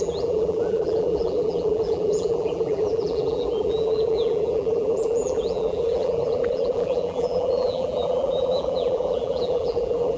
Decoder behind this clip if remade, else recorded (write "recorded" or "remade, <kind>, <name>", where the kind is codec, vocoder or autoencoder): remade, vocoder, BigVGAN v2